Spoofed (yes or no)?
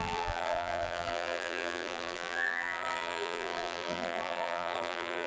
yes